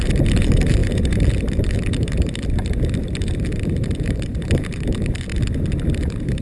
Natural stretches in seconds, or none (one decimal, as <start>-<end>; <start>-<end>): 5.3-6.0